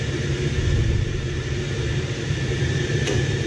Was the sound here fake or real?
fake